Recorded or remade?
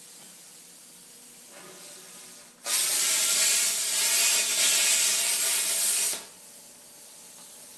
recorded